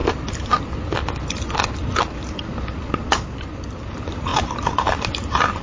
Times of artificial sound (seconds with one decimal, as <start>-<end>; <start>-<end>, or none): 0.0-0.5; 4.3-5.6